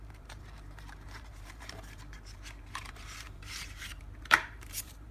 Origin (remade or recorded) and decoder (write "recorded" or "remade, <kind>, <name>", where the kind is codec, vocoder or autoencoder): remade, vocoder, BigVGAN v2